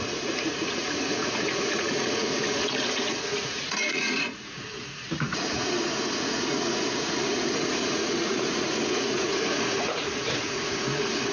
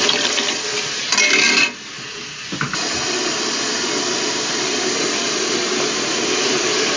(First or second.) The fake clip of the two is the first